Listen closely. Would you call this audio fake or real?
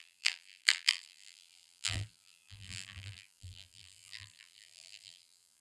fake